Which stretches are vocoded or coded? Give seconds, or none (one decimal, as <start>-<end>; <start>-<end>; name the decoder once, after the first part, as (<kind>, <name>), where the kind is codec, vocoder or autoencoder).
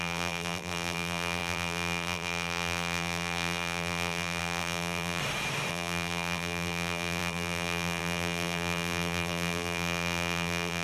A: 0.0-5.2 (vocoder, BigVGAN v2); 5.7-10.8